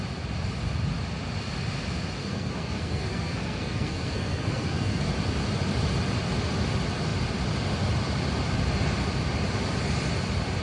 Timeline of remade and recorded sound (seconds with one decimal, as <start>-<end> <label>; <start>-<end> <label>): 0.0-2.2 recorded; 2.2-5.1 remade; 5.1-10.6 recorded